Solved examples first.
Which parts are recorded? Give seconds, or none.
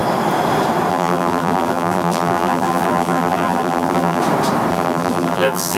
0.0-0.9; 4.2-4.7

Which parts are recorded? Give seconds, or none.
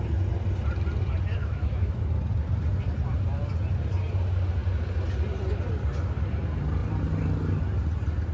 0.0-1.4; 2.0-8.3